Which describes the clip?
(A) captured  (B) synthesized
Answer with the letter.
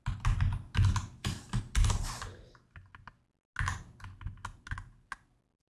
A